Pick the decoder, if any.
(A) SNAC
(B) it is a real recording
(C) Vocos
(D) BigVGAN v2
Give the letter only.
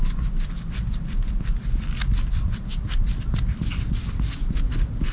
D